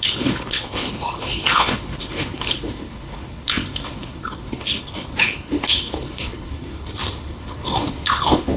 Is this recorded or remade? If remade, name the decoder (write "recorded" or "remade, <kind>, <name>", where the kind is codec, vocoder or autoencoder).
remade, codec, HILCodec